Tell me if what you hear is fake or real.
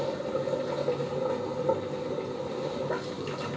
real